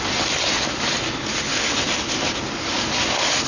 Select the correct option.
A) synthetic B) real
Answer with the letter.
B